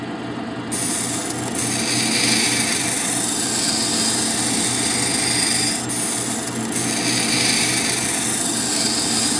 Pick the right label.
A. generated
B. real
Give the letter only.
B